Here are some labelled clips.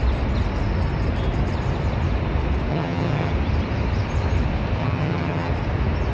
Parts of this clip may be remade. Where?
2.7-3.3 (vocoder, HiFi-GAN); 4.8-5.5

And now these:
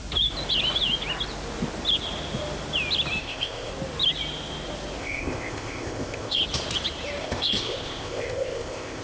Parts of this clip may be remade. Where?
3.2-3.7 (codec, ZipCodec); 5.0-6.4; 7.2-9.0

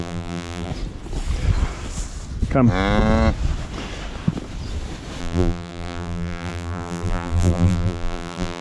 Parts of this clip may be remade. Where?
0.0-0.7 (vocoder, BigVGAN v2); 5.2-8.6